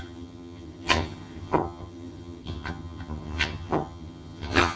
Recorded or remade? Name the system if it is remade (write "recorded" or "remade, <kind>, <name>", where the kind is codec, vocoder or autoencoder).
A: remade, vocoder, HiFi-GAN